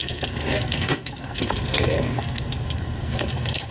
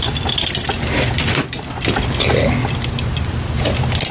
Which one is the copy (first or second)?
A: first